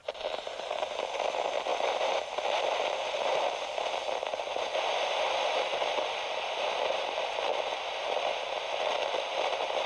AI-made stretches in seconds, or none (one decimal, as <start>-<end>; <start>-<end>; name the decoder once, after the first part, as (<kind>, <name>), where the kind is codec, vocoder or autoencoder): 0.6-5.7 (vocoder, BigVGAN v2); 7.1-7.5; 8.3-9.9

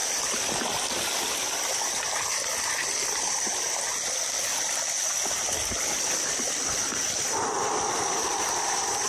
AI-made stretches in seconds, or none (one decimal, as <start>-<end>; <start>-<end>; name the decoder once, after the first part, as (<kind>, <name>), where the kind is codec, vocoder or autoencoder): none

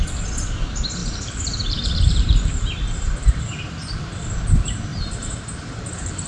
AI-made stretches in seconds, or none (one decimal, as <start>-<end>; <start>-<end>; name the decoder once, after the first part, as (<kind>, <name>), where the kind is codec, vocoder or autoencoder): 1.0-3.4 (vocoder, BigVGAN v2); 4.9-6.3

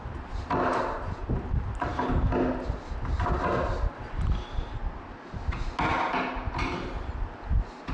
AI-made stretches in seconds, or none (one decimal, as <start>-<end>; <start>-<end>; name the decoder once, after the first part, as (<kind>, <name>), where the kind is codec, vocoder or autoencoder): none

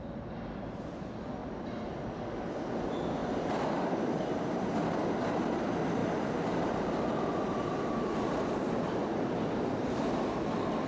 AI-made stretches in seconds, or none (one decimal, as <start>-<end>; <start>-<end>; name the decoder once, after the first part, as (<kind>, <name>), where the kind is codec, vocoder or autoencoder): 1.4-1.9 (vocoder, BigVGAN v2); 3.2-4.8; 6.0-7.0

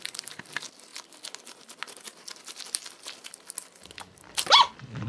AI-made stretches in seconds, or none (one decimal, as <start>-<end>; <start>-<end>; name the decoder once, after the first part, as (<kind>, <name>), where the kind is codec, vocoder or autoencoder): none